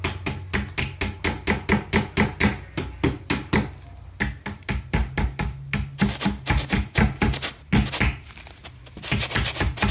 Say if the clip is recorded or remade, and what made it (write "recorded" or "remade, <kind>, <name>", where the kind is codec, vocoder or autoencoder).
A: recorded